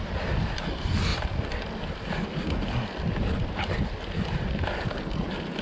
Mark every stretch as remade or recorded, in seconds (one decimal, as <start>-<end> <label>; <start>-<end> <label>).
0.0-5.6 recorded